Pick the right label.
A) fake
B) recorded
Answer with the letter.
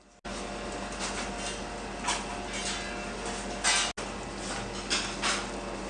B